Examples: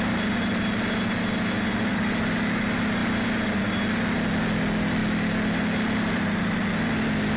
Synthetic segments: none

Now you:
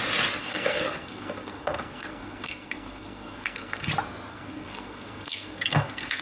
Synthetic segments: 0.4-3.9 (codec, SNAC); 4.3-6.2

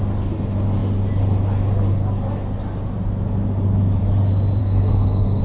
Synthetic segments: 4.6-5.4 (codec, SNAC)

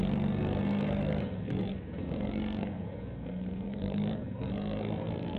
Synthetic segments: 0.0-5.4 (codec, SNAC)